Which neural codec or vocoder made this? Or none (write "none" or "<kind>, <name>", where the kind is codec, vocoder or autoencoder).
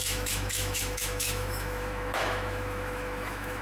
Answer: autoencoder, DAC-VAE